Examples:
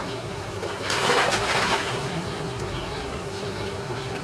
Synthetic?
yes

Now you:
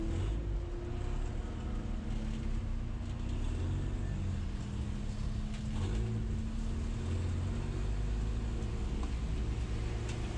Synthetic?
no